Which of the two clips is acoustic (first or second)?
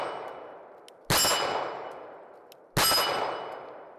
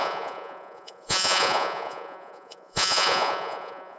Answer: first